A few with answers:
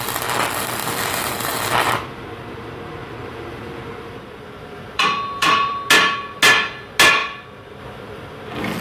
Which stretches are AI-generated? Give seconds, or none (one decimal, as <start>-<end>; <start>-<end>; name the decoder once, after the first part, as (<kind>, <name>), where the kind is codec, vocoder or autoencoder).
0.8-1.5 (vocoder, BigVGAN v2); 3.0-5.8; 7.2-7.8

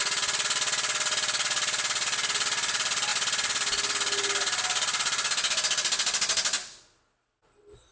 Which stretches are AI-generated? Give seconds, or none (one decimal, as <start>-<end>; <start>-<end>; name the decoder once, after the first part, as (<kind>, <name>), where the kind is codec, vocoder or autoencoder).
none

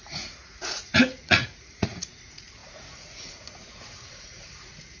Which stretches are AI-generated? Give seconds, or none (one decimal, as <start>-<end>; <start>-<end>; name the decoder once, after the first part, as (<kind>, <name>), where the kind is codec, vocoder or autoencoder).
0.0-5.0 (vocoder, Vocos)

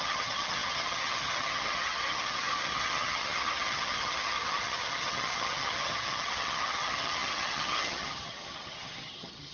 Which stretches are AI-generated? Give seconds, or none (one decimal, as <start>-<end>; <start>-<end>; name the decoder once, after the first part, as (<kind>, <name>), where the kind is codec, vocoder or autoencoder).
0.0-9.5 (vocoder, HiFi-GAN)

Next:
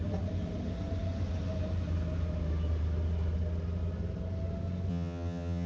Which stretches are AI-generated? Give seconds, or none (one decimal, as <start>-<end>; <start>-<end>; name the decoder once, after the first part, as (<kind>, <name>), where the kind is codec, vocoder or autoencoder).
4.9-5.7 (vocoder, HiFi-GAN)